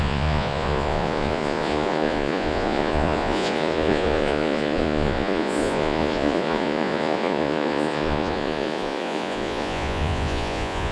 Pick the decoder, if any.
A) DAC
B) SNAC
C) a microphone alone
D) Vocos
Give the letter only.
D